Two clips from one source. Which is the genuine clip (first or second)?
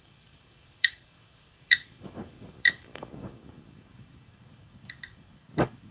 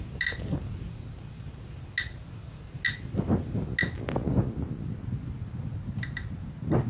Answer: second